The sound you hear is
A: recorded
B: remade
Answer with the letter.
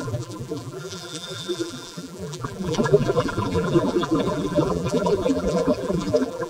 B